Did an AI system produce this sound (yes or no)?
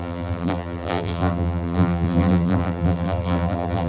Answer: yes